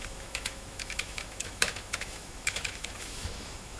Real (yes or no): no